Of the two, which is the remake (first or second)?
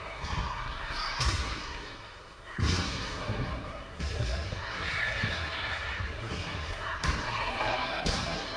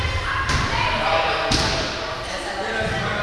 first